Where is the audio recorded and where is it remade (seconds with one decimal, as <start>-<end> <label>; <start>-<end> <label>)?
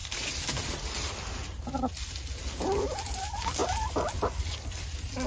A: 0.0-5.3 recorded